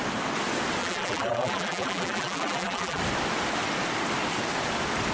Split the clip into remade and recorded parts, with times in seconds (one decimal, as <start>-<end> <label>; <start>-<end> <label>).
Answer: 0.0-0.8 recorded; 0.8-3.0 remade; 3.0-5.1 recorded